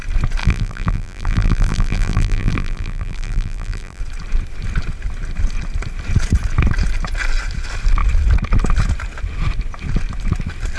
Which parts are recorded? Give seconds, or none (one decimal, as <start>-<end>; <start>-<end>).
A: 0.0-0.4; 4.0-10.8